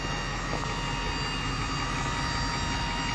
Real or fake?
real